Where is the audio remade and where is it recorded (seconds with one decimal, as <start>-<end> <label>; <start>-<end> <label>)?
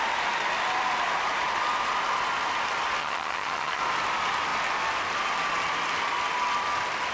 0.0-3.0 recorded; 3.0-3.8 remade; 3.8-7.1 recorded